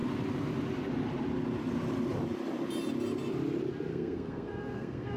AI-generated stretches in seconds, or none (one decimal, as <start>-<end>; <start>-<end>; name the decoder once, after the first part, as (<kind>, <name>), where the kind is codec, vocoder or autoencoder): 3.9-5.2 (codec, SNAC)